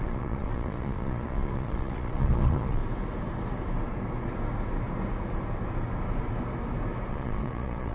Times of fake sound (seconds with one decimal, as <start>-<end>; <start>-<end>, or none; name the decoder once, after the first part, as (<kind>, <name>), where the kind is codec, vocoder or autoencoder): 0.0-2.8 (vocoder, Vocos); 7.1-7.9